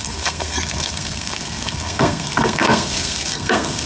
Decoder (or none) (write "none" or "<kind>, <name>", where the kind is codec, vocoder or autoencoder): codec, SNAC